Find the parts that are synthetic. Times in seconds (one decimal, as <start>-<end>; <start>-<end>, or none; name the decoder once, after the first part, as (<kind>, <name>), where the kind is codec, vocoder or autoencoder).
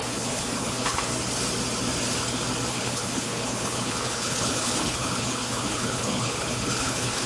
0.0-1.1 (codec, HILCodec); 2.7-7.3